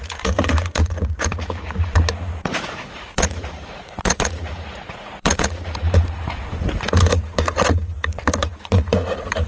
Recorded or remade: remade